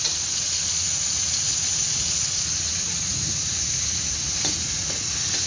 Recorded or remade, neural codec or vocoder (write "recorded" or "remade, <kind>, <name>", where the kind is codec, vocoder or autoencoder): remade, vocoder, Vocos